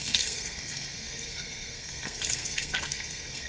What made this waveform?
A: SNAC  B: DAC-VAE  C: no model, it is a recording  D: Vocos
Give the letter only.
A